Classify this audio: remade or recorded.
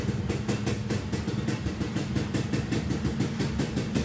recorded